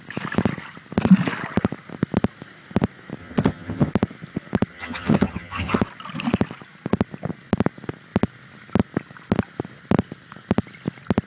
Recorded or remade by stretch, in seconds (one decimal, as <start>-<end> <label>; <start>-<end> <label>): 0.0-3.2 recorded; 3.2-3.9 remade; 3.9-4.7 recorded; 4.7-5.8 remade; 5.8-11.3 recorded